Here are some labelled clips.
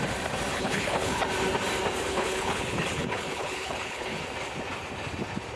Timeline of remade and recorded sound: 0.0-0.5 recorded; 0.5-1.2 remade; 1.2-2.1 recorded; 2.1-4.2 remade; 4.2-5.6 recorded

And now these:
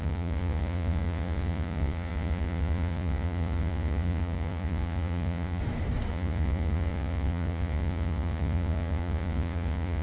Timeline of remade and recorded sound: 0.0-5.6 remade; 5.6-6.1 recorded; 6.1-10.0 remade

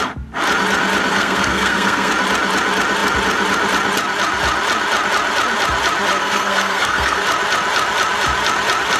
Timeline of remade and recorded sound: 0.0-1.1 recorded; 1.1-2.1 remade; 2.1-6.2 recorded; 6.2-7.2 remade; 7.2-9.0 recorded

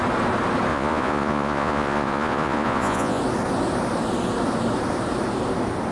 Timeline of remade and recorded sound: 0.0-0.7 recorded; 0.7-3.2 remade; 3.2-5.9 recorded

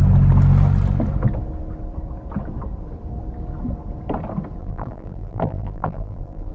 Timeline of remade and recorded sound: 0.0-4.6 recorded; 4.6-6.5 remade

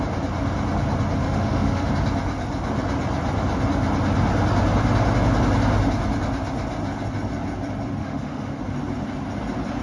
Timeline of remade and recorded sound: 0.0-1.2 recorded; 1.2-1.9 remade; 1.9-8.0 recorded; 8.0-8.6 remade; 8.6-9.8 recorded

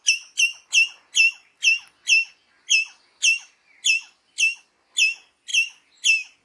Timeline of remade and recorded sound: 0.0-6.4 recorded

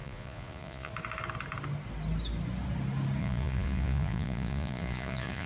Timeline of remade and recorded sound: 0.0-0.9 remade; 0.9-3.2 recorded; 3.2-5.5 remade